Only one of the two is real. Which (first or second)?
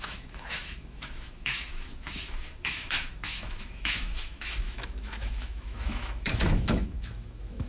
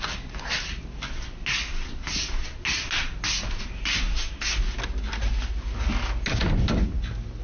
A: second